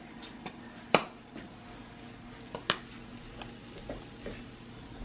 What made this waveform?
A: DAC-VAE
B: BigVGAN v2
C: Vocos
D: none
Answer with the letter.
D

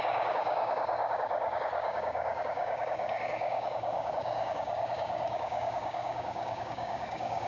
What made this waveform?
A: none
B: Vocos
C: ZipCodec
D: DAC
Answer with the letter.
D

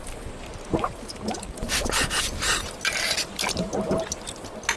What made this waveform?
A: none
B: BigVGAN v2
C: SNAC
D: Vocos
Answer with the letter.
A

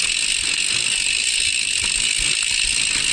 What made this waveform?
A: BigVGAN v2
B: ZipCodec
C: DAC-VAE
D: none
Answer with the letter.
D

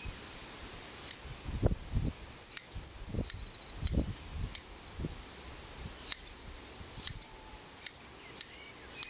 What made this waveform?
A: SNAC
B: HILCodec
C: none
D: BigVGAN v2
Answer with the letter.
C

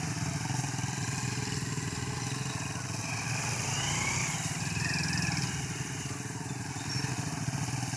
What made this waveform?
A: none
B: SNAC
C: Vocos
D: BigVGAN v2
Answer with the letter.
A